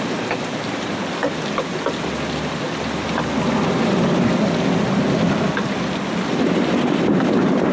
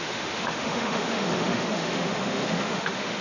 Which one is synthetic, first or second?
second